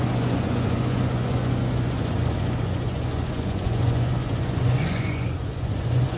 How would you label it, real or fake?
fake